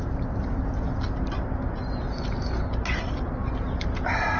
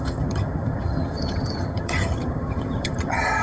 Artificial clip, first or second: second